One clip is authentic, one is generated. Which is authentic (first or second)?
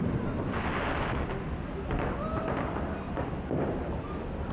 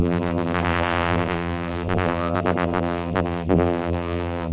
first